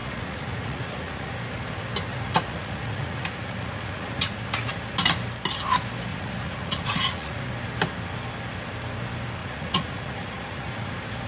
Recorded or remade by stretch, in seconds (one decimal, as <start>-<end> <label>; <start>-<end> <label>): 0.0-1.3 remade; 1.3-2.1 recorded; 2.1-4.7 remade; 4.7-6.1 recorded; 6.1-7.5 remade; 7.5-9.4 recorded; 9.4-10.9 remade; 10.9-11.3 recorded